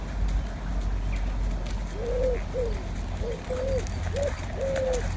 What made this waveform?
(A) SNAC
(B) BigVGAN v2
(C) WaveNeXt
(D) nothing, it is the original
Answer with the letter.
D